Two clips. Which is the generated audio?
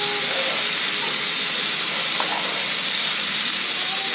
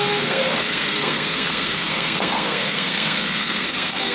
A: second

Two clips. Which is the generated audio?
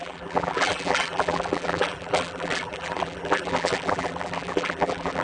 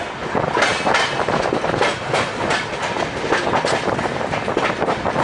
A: first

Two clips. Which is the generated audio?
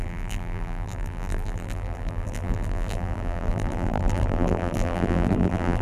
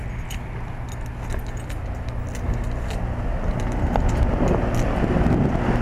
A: first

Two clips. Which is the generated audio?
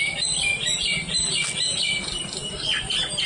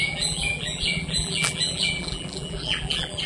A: second